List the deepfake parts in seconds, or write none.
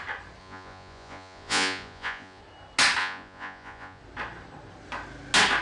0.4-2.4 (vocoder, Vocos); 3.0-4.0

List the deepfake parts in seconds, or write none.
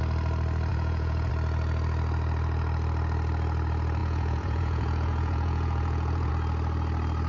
0.7-1.3 (vocoder, Vocos); 4.0-6.3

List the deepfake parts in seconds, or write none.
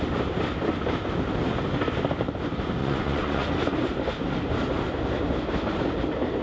2.8-3.5 (vocoder, Vocos)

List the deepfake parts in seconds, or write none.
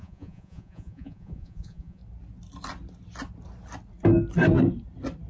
0.0-2.0 (vocoder, Vocos)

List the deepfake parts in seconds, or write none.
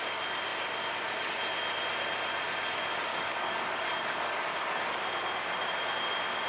3.1-4.9 (codec, DAC)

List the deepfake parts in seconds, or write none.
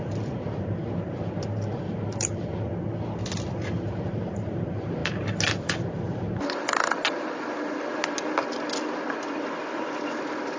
none